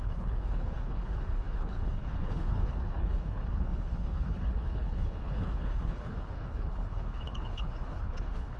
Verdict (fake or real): fake